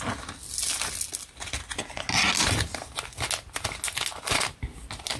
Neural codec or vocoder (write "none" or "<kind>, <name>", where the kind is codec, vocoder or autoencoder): none